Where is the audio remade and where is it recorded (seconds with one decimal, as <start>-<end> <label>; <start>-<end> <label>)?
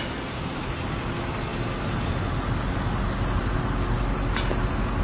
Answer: 0.0-5.0 recorded